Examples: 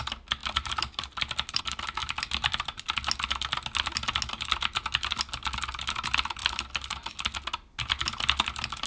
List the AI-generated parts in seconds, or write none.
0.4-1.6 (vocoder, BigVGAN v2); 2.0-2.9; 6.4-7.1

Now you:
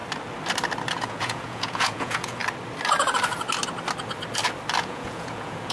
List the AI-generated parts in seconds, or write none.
1.0-2.4 (vocoder, Vocos); 4.8-5.7

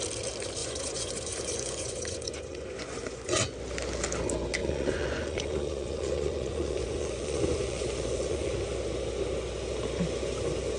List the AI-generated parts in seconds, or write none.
0.6-3.5 (vocoder, Vocos); 4.6-8.5

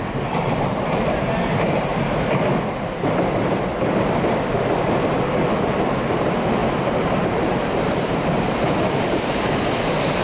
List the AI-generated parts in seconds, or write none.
0.0-1.9 (vocoder, BigVGAN v2); 5.9-10.2